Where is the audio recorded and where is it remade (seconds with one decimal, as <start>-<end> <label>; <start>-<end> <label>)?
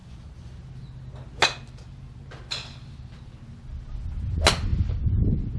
0.0-5.6 recorded